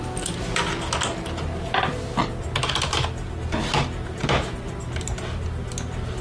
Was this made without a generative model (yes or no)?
yes